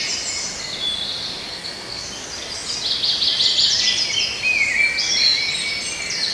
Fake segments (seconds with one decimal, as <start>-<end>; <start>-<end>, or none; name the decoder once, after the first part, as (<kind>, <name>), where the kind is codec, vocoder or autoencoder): 1.5-2.1 (codec, SNAC)